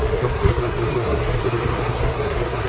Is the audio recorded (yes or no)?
no